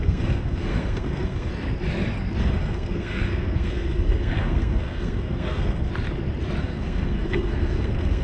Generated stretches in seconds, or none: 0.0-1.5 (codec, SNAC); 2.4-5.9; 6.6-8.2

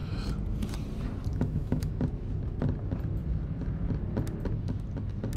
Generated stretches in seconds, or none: 1.3-2.0 (autoencoder, DAC-VAE)

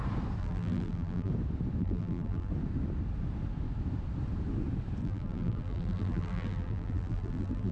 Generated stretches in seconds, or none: 0.4-1.3 (vocoder, BigVGAN v2); 1.8-2.5; 5.0-7.7

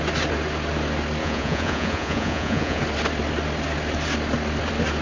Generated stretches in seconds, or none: 1.2-2.8 (vocoder, Vocos)

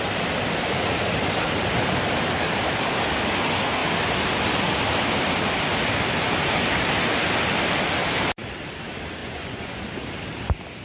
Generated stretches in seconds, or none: 9.2-9.8 (vocoder, Vocos)

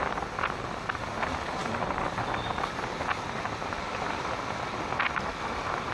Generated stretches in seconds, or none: none